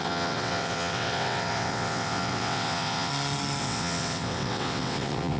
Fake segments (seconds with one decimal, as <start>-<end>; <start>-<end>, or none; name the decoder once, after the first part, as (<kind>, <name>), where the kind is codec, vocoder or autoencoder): 0.0-3.1 (vocoder, WaveNeXt); 3.6-5.4